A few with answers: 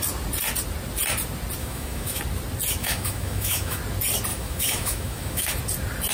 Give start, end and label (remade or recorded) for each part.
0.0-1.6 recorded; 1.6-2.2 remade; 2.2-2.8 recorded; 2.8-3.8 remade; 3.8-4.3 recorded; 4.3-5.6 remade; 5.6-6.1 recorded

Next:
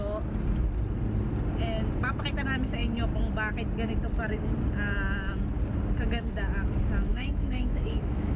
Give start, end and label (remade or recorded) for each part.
0.0-7.1 recorded; 7.1-8.4 remade

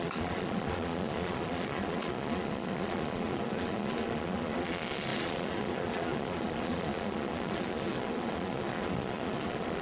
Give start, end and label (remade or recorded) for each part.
0.0-9.8 remade

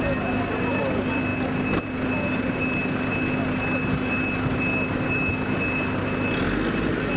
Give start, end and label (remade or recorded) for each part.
0.0-7.2 recorded